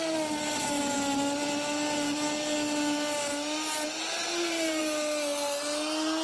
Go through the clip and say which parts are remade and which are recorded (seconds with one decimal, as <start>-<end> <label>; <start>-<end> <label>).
0.0-4.2 recorded; 4.2-4.8 remade; 4.8-6.2 recorded